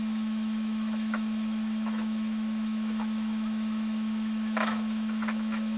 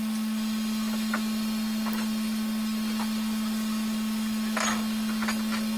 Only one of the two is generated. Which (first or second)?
first